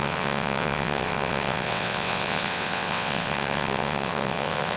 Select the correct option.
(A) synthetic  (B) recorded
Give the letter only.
A